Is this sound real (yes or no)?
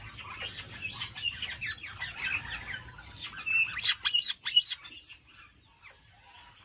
yes